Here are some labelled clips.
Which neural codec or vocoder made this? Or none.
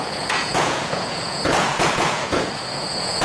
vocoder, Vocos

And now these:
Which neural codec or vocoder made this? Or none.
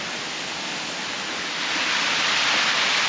none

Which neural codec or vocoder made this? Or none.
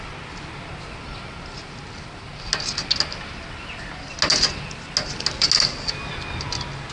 none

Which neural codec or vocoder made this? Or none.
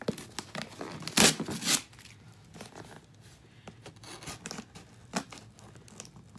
none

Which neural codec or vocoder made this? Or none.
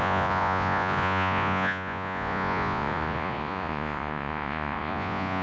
vocoder, Vocos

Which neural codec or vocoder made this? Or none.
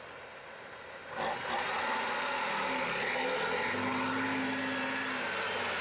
none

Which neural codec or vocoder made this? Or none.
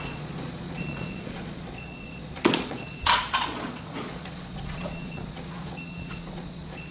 vocoder, Vocos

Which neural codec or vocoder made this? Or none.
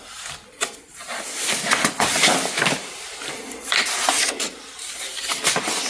none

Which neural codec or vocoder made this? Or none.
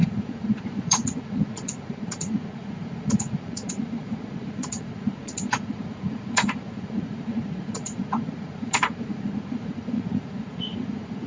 vocoder, Vocos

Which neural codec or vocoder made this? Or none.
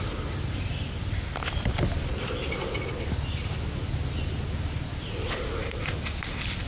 none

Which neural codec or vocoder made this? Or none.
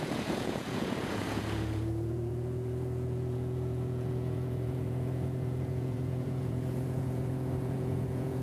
vocoder, Vocos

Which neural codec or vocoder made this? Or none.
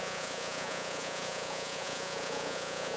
vocoder, Vocos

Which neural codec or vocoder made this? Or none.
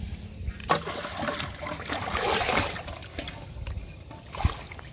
none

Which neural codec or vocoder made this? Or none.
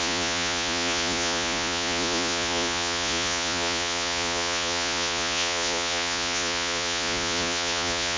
vocoder, Vocos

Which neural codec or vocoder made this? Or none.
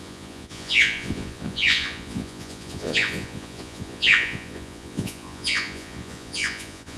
vocoder, Vocos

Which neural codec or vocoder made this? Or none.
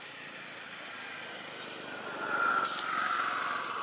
none